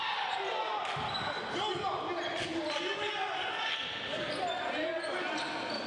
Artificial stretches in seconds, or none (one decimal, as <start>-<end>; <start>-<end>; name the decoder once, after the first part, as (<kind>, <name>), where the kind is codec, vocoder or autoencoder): none